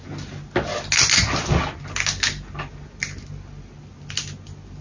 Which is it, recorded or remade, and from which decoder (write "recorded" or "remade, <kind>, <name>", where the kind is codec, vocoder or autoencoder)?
recorded